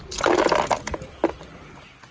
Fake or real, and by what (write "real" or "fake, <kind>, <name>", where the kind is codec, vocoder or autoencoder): real